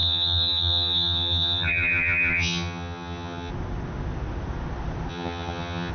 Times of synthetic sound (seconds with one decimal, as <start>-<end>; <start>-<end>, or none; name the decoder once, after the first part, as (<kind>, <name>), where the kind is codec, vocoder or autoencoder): 0.0-3.5 (vocoder, HiFi-GAN); 5.1-5.9